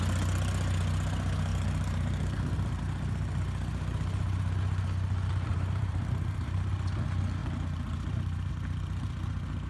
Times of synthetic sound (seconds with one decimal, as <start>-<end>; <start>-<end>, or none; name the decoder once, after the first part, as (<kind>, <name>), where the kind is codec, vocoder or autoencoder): 1.5-2.8 (vocoder, BigVGAN v2); 5.5-6.7; 7.4-8.5